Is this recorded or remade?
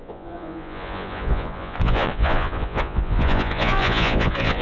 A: remade